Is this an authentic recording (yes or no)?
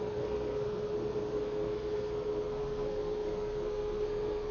no